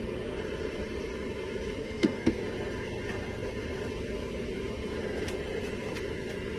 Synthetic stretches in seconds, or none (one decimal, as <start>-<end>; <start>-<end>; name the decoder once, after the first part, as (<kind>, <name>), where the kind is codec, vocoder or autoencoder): 1.8-2.4 (codec, SNAC)